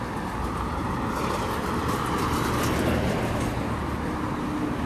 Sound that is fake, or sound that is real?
real